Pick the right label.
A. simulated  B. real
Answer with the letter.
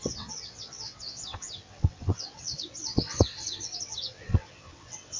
A